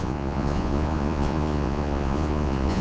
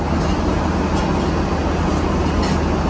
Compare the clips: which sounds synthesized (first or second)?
first